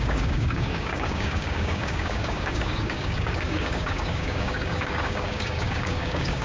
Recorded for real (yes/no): no